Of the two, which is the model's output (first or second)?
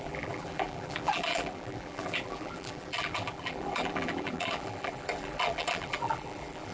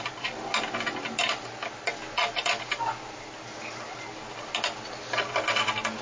first